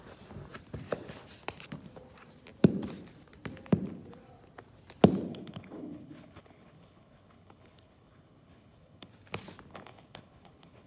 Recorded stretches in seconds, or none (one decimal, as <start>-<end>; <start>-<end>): 0.0-5.3; 9.1-9.7